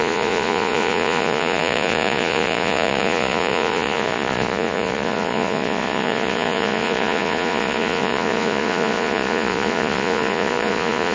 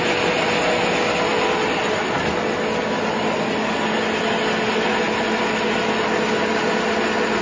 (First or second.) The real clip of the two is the second